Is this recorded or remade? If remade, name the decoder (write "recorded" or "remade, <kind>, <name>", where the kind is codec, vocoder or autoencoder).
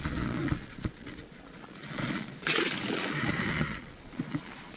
remade, vocoder, Vocos